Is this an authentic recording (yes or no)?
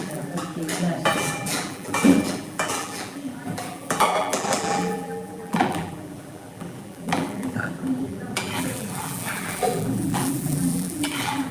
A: no